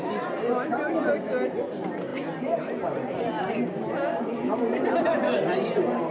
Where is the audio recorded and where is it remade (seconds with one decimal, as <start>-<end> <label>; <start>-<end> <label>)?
0.0-6.1 recorded